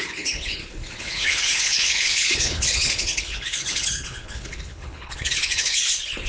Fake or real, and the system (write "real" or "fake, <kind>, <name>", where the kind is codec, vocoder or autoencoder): fake, codec, HILCodec